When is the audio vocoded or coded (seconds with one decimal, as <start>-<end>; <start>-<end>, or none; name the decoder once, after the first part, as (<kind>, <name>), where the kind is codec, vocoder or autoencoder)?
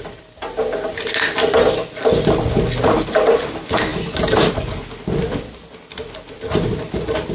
none